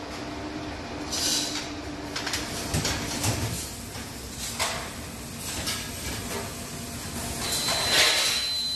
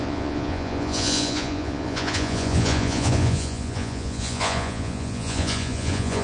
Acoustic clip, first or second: first